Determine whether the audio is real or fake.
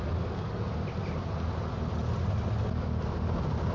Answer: real